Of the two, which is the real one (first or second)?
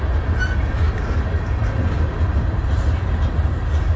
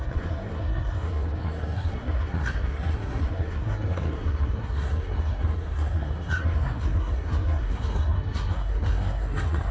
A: first